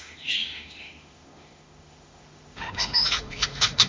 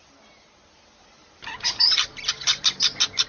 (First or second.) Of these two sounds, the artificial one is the first